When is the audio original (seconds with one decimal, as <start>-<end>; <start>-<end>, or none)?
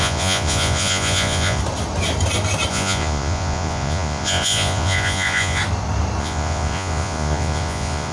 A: 1.6-2.7; 5.6-6.2